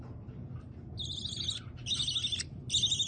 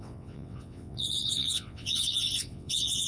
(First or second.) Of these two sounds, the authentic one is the first